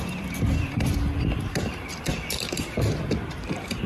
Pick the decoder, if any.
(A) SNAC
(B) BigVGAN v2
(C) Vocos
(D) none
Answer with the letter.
B